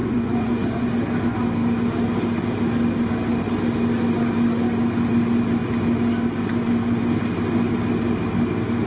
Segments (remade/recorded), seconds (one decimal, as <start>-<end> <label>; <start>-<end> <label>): 0.0-0.9 remade; 0.9-8.9 recorded